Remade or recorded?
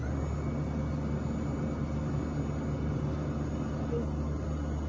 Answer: recorded